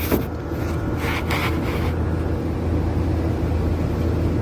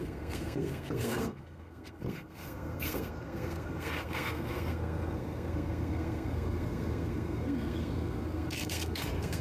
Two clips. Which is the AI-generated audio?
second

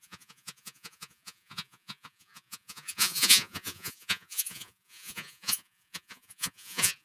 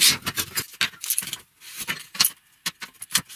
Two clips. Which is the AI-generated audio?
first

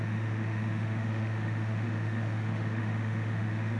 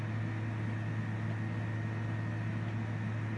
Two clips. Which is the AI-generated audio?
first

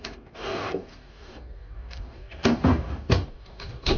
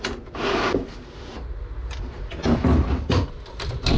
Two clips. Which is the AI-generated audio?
first